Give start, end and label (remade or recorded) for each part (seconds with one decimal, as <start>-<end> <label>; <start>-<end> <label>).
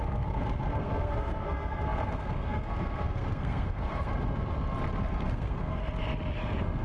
0.0-4.1 remade; 4.1-5.1 recorded; 5.1-5.8 remade; 5.8-6.8 recorded